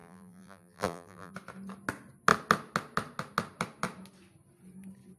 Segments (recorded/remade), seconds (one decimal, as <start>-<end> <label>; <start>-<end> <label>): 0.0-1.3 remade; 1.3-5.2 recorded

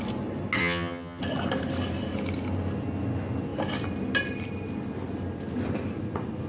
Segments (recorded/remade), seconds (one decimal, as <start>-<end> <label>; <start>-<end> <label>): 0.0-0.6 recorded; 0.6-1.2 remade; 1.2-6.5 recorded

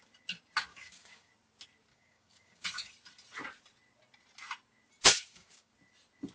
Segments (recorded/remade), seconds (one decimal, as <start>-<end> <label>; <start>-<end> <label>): 0.0-0.7 recorded; 0.7-1.3 remade; 1.3-1.9 recorded; 1.9-2.9 remade; 2.9-5.1 recorded; 5.1-5.7 remade; 5.7-6.3 recorded

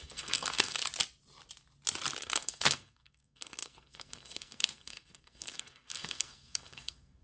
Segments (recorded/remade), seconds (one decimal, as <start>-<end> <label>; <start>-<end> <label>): 0.0-0.8 remade; 0.8-2.2 recorded; 2.2-7.2 remade